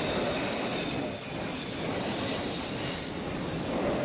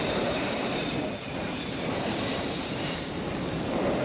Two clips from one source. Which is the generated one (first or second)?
second